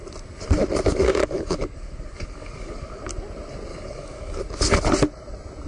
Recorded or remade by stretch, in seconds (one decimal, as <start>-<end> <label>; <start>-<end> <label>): 0.0-0.9 recorded; 0.9-3.0 remade; 3.0-3.7 recorded; 3.7-4.4 remade; 4.4-5.7 recorded